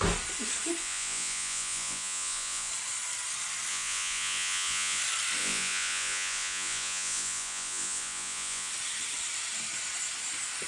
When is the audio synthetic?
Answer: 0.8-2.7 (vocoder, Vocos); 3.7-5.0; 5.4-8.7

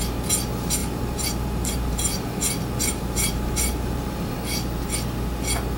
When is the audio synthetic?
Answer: 0.8-4.3 (vocoder, BigVGAN v2)

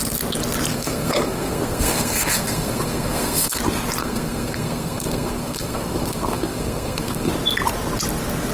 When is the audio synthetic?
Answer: 0.7-3.6 (codec, SNAC); 4.0-7.3

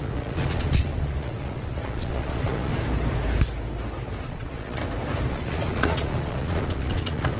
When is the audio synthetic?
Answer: 0.0-2.7 (vocoder, Vocos); 4.2-4.8; 5.3-7.4

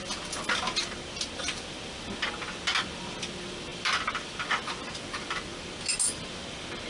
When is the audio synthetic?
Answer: none